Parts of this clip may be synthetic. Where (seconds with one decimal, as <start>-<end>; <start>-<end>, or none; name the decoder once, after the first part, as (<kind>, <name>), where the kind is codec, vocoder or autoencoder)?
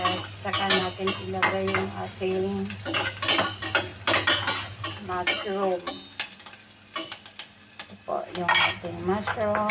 none